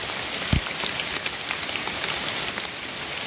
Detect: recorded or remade recorded